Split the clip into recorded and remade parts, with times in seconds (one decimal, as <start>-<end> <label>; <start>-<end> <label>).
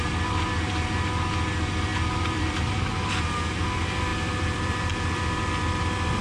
0.0-1.9 recorded; 1.9-2.7 remade; 2.7-4.1 recorded; 4.1-5.8 remade; 5.8-6.2 recorded